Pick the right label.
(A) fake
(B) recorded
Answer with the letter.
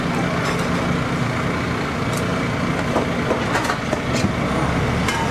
B